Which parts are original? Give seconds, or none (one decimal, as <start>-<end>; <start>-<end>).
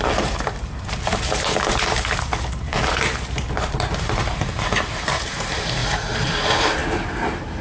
none